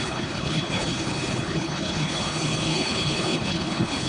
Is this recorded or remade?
remade